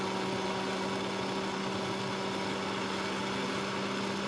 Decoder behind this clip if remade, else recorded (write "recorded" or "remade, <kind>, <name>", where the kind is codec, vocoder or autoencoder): recorded